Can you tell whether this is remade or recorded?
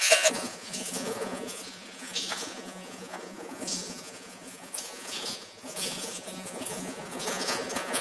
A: remade